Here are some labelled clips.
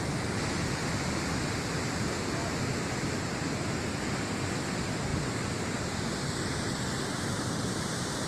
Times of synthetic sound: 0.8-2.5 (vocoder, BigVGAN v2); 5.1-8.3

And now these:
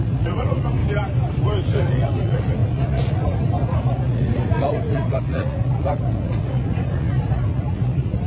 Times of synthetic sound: 0.0-0.8 (vocoder, Vocos); 1.6-8.3

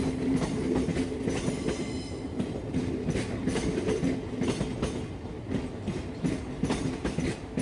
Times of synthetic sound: none

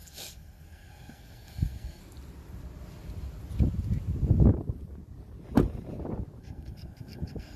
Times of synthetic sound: 0.0-2.0 (codec, SNAC); 6.4-7.6

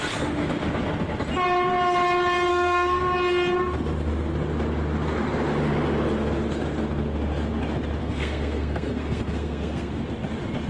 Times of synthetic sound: 2.5-3.0 (codec, SNAC); 8.0-10.0

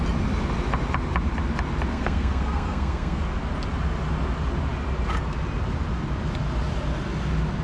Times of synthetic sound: 1.9-3.2 (codec, SNAC)

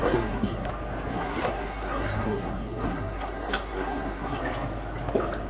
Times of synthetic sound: 0.0-0.7 (codec, SNAC); 1.1-4.4